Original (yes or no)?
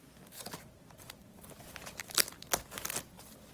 yes